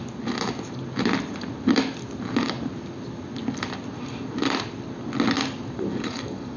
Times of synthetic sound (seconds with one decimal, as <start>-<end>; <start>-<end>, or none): 5.9-6.6